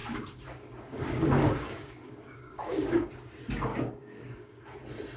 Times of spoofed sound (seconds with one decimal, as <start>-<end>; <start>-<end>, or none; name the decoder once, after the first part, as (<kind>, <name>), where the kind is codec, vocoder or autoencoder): 0.0-3.1 (codec, DAC); 3.7-4.6